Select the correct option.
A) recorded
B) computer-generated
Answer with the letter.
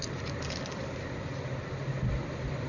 A